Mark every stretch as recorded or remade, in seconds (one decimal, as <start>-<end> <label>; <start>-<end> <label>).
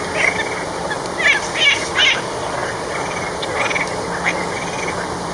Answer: 0.0-5.3 recorded